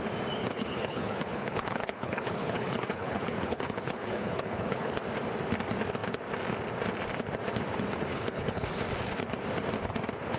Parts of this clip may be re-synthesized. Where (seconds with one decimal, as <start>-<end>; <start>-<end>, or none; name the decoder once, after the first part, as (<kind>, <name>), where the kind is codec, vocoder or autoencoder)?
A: 0.4-4.9 (codec, HILCodec); 8.1-8.7